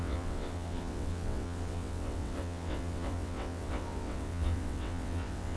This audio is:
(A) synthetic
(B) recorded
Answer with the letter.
A